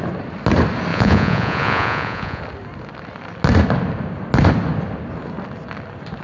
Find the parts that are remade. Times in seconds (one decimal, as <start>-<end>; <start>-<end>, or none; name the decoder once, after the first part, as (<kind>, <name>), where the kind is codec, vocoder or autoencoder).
0.9-2.4 (vocoder, Vocos)